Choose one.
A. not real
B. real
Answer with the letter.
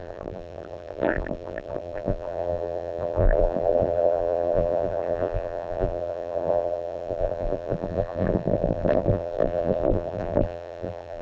A